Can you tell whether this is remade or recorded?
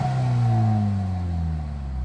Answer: recorded